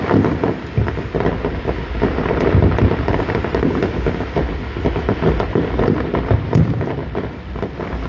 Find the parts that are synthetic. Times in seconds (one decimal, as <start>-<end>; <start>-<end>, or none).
none